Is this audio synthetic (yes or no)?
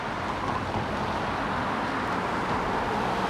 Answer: no